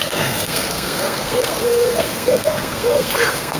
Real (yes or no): no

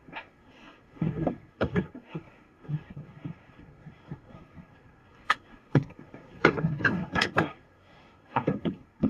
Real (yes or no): no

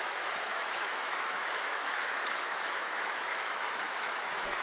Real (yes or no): no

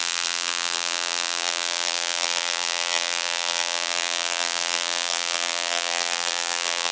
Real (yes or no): no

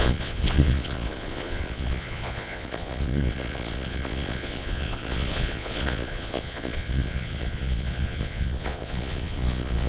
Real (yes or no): no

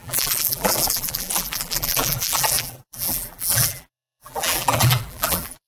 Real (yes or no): no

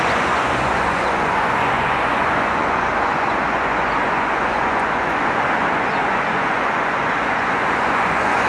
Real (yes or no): no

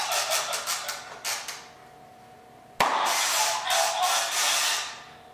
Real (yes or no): yes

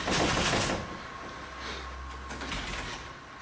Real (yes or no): yes